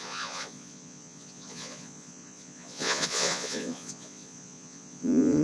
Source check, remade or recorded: remade